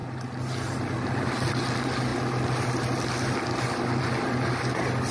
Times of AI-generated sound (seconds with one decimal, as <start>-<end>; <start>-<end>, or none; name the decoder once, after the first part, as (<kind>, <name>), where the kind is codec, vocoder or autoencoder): none